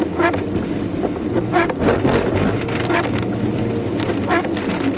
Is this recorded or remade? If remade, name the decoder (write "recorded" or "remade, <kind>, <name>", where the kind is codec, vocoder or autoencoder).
recorded